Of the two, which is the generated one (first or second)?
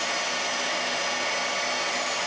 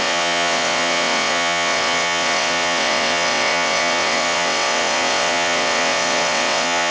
second